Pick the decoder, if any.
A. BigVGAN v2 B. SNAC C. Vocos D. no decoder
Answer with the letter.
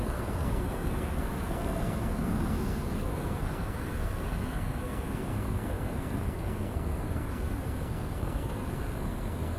B